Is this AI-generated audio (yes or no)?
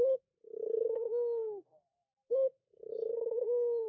yes